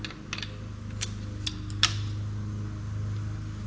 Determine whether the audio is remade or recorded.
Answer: recorded